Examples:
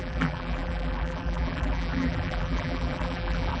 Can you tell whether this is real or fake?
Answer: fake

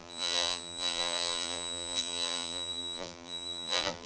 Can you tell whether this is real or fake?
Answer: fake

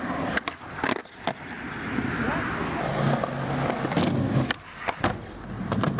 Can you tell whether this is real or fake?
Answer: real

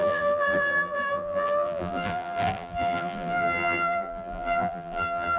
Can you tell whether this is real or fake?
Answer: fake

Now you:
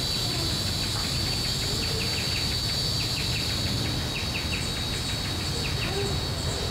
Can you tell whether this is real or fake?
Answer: real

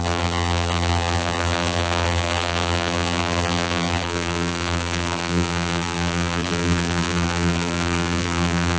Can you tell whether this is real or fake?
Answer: fake